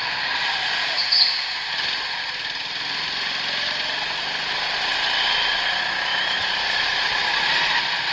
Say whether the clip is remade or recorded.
recorded